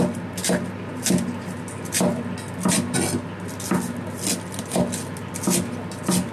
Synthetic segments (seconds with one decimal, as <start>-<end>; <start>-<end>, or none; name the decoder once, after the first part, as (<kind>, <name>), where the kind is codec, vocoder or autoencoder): none